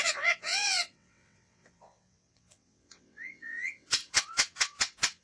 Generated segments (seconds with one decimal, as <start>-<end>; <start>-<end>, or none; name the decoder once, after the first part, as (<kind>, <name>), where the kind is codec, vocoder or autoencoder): 0.0-5.2 (vocoder, WaveNeXt)